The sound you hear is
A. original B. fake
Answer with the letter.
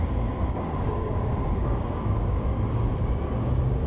B